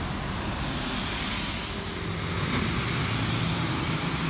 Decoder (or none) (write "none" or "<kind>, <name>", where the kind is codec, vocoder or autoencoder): none